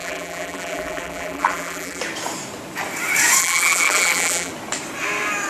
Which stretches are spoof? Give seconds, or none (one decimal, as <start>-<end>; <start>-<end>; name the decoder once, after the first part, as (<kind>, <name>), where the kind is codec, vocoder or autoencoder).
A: 0.0-2.0 (vocoder, BigVGAN v2); 3.4-4.5